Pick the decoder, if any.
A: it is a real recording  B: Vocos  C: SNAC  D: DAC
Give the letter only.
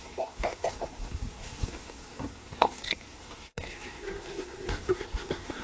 C